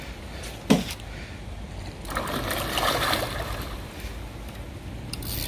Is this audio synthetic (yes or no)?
no